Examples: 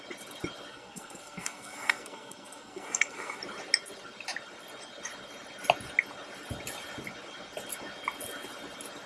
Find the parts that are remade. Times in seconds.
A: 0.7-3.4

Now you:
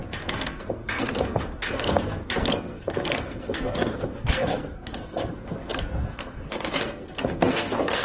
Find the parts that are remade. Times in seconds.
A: 0.0-8.0

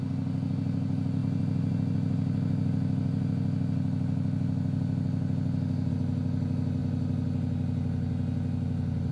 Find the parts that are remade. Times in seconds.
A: none

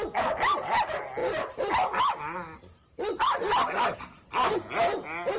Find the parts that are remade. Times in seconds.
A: none

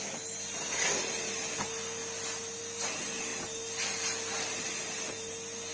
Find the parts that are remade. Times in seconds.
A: none